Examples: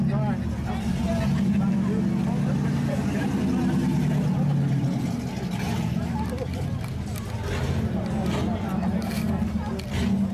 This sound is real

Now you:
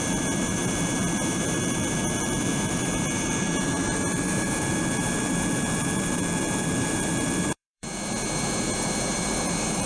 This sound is fake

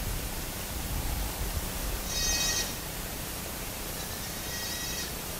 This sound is fake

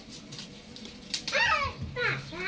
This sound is real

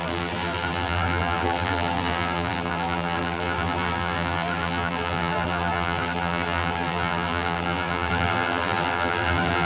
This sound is fake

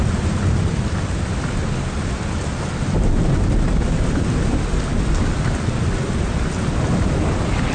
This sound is real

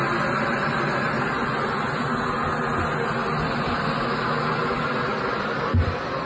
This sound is real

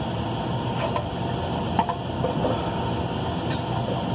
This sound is real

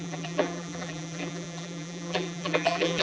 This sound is fake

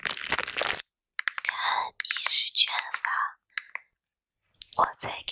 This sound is real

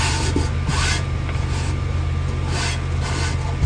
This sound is real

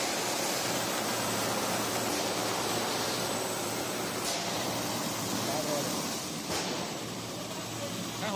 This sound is fake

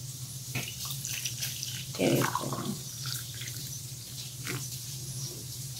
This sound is fake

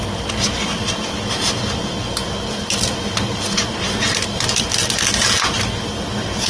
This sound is real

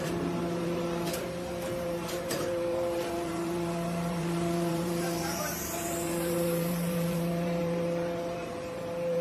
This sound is fake